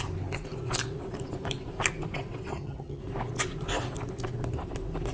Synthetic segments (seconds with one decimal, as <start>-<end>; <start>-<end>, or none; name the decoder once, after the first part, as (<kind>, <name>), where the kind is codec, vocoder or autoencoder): 2.5-3.0 (vocoder, HiFi-GAN)